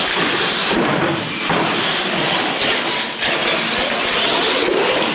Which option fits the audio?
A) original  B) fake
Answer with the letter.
A